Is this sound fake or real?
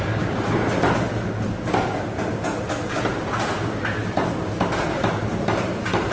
real